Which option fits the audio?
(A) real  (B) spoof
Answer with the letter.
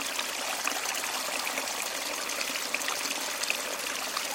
A